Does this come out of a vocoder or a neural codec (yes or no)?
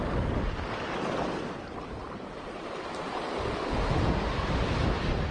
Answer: no